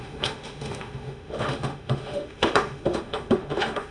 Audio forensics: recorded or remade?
remade